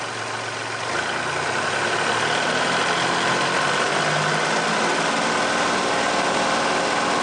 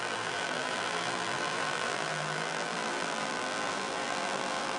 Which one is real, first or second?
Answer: first